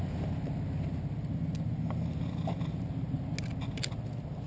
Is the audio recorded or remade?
recorded